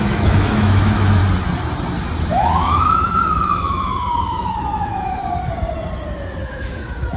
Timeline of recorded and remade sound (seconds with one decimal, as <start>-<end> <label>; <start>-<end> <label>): 0.0-1.2 remade; 1.2-2.2 recorded; 2.2-5.2 remade; 5.2-6.4 recorded; 6.4-7.2 remade